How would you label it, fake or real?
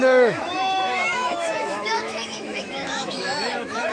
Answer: fake